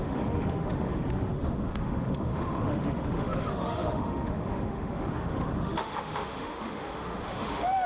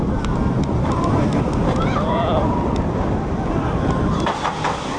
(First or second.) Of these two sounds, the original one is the second